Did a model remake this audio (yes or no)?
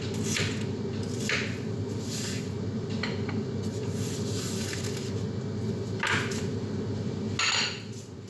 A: no